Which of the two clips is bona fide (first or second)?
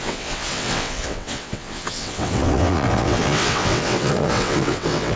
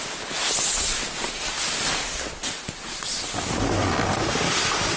second